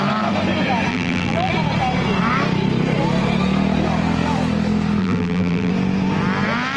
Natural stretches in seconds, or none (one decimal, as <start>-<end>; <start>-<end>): 0.0-0.9; 1.5-5.0; 5.7-6.8